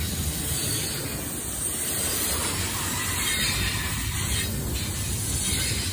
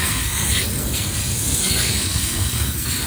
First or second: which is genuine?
first